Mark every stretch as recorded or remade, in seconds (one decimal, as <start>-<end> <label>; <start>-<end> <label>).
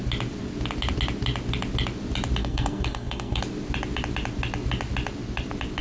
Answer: 0.0-2.4 recorded; 2.4-3.4 remade; 3.4-5.8 recorded